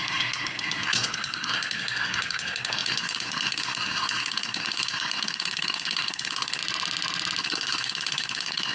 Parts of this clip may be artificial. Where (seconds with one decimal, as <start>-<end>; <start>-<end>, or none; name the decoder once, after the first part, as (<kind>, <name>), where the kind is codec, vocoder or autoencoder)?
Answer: 0.0-6.6 (codec, SNAC); 7.4-8.7